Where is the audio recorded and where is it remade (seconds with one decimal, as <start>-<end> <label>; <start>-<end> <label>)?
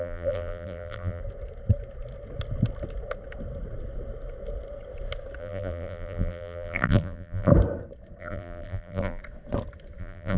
0.0-1.2 remade; 1.2-5.4 recorded; 5.4-7.5 remade; 7.5-8.2 recorded; 8.2-9.2 remade; 9.2-10.0 recorded; 10.0-10.4 remade